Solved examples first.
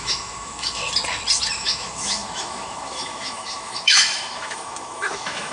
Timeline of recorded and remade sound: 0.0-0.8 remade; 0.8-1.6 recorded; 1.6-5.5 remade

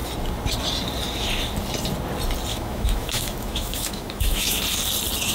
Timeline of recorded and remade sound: 0.0-2.5 recorded; 2.5-4.6 remade; 4.6-5.3 recorded

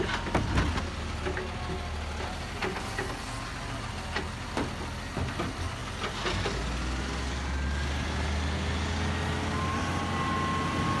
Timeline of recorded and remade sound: 0.0-11.0 recorded

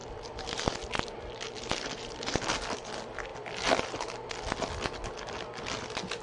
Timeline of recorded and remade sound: 0.0-6.2 recorded

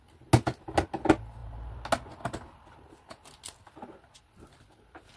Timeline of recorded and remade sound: 0.0-5.2 recorded